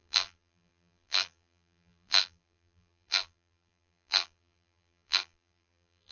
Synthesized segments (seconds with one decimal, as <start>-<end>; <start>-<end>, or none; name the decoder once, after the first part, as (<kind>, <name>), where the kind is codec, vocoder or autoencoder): 0.0-6.1 (vocoder, BigVGAN v2)